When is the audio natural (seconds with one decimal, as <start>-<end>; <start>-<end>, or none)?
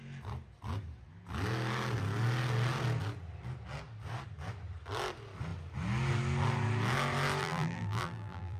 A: 0.0-7.4